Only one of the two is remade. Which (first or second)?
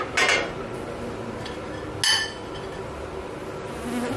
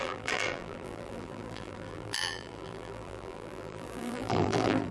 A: second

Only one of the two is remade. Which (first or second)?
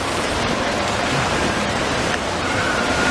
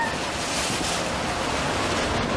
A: first